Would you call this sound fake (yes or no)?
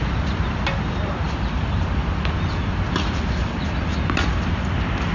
no